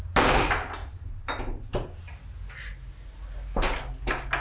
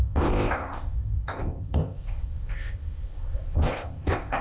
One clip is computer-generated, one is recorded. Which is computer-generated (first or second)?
second